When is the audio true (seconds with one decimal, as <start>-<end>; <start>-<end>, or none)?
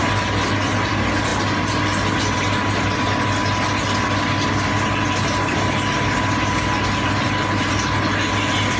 0.0-8.8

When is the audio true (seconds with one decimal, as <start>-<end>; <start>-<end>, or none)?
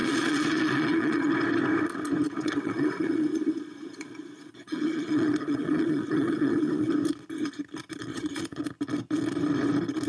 1.3-2.4; 6.9-8.1; 8.6-10.1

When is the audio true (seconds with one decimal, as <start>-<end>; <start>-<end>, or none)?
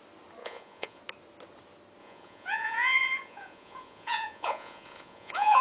0.0-0.4; 1.0-2.0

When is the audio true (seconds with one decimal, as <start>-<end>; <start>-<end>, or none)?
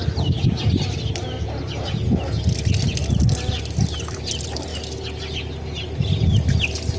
0.0-7.0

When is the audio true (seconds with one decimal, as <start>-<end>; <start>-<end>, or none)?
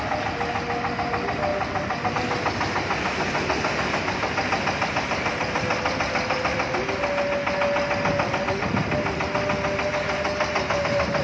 0.0-11.2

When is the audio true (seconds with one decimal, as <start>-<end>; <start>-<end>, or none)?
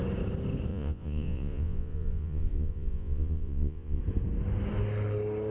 0.0-0.7; 4.0-5.5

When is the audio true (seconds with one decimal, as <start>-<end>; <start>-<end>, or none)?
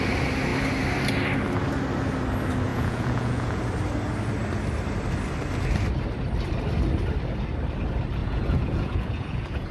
0.0-2.7; 3.6-8.2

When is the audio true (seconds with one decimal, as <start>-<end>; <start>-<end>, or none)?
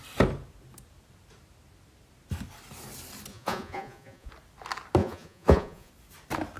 0.0-3.3; 4.3-5.0; 5.9-6.6